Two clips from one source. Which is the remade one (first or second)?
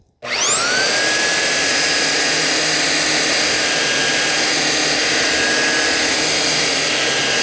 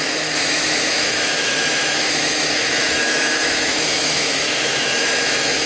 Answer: second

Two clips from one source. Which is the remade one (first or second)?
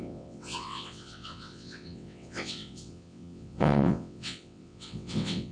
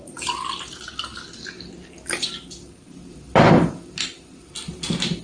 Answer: first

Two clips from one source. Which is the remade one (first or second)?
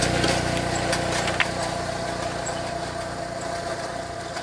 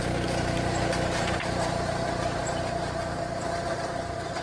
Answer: second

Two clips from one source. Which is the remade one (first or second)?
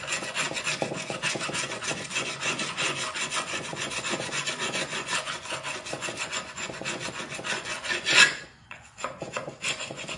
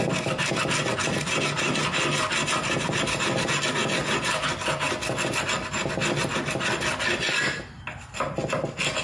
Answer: first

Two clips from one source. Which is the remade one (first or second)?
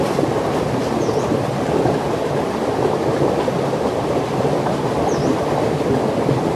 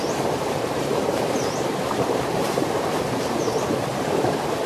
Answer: second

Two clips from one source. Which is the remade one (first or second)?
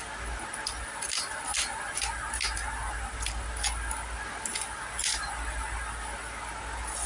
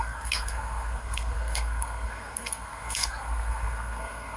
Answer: second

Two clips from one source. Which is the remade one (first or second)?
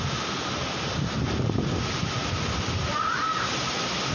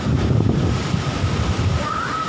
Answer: second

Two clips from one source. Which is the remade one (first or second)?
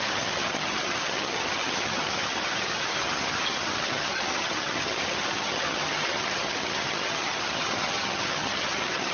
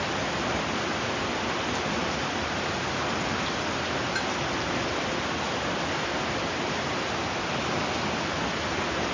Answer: first